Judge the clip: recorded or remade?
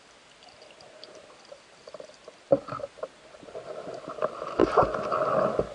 recorded